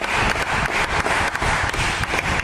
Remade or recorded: recorded